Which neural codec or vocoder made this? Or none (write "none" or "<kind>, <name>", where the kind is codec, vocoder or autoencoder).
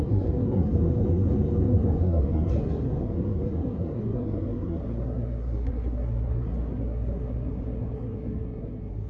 codec, SNAC